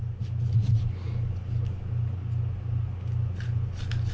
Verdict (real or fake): real